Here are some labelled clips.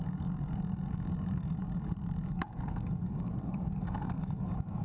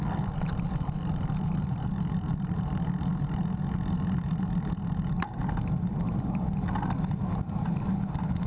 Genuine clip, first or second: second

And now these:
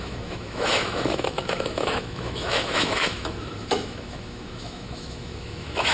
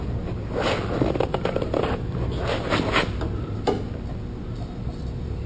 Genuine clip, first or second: second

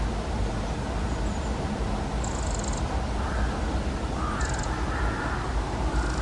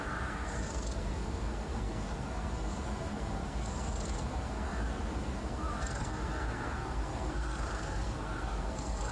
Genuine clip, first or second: first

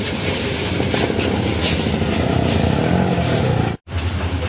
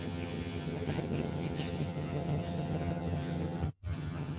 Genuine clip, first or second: first